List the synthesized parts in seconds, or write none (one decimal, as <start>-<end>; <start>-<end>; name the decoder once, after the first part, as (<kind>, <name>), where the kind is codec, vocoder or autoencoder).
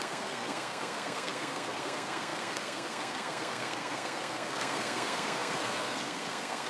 0.0-6.7 (codec, SNAC)